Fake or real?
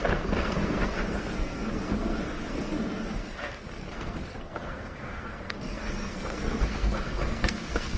fake